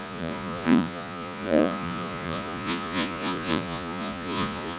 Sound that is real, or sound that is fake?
fake